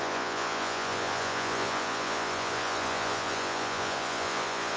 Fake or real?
fake